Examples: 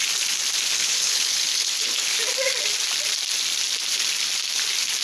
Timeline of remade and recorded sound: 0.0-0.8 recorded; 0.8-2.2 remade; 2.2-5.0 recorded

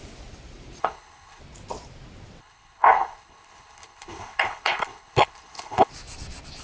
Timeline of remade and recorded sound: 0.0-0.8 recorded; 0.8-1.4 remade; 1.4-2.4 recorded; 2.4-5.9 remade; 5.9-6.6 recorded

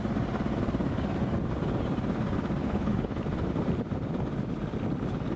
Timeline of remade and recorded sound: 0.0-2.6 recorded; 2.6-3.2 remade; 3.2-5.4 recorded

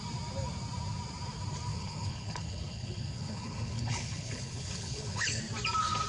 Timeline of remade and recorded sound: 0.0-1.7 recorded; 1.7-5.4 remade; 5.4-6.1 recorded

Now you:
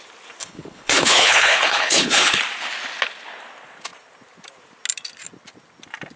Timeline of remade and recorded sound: 0.0-0.4 recorded; 0.4-2.4 remade; 2.4-6.2 recorded